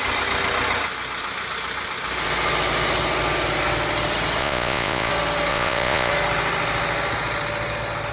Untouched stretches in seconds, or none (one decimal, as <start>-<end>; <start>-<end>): 0.0-4.4; 5.1-5.5; 6.1-8.1